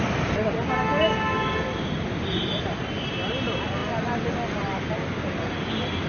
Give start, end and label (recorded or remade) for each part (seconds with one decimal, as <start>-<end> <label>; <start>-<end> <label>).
0.0-6.1 recorded